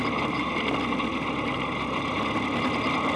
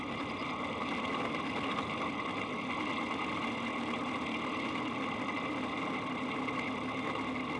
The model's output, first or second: second